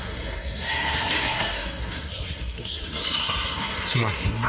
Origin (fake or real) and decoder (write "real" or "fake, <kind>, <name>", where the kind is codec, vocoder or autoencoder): fake, codec, SNAC